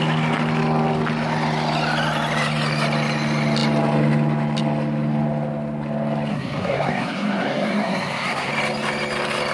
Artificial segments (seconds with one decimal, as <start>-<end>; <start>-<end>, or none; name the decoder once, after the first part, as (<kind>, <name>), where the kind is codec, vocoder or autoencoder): 6.3-8.5 (codec, SNAC)

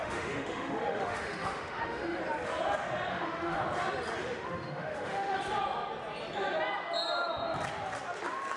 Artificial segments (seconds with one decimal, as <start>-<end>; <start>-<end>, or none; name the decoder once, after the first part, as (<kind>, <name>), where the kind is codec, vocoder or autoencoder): 0.0-2.2 (autoencoder, DAC-VAE); 3.1-3.6; 4.2-5.4

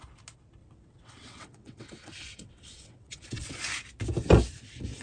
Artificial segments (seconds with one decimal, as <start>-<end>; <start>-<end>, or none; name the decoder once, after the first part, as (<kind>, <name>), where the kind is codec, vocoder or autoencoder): 0.6-3.6 (vocoder, WaveNeXt)

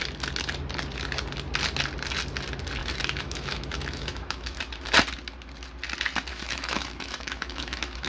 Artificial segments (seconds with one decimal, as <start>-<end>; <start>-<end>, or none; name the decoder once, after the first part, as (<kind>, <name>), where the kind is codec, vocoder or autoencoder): 2.8-4.6 (autoencoder, DAC-VAE); 6.3-8.1

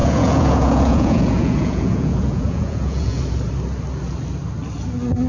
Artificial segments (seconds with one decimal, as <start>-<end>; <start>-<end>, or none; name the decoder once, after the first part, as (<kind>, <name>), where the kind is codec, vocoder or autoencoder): 0.0-3.2 (vocoder, Vocos)

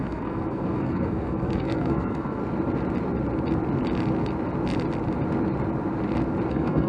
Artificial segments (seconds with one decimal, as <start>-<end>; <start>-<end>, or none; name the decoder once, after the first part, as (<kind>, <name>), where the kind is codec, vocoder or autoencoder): 0.0-2.4 (codec, SNAC); 6.5-6.9

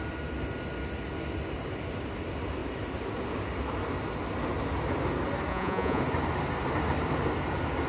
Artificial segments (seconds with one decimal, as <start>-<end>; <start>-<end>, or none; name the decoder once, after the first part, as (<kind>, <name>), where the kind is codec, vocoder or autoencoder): 5.5-6.0 (vocoder, Vocos)

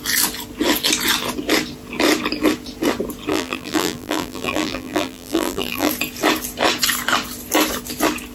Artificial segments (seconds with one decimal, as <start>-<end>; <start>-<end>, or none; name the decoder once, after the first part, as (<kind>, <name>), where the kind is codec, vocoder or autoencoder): 3.3-5.9 (vocoder, BigVGAN v2)